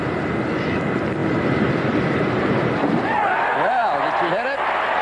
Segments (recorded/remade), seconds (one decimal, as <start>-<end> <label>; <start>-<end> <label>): 0.0-1.2 recorded; 1.2-2.9 remade; 2.9-5.0 recorded